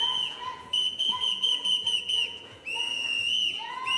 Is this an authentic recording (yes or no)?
no